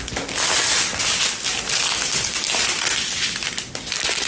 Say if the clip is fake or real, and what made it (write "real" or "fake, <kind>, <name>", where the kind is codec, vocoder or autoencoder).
real